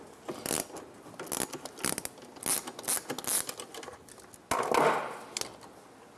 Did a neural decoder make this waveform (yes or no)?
no